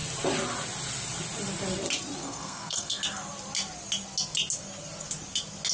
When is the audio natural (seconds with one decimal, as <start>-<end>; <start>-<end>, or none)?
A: 0.0-2.2; 3.0-5.7